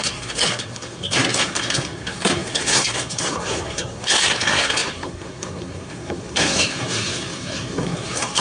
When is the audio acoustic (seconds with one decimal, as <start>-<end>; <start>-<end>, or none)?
none